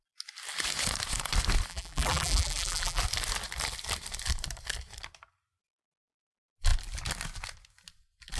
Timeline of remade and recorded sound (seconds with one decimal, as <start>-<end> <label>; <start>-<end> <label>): 0.0-1.7 recorded; 1.7-3.0 remade; 3.0-8.4 recorded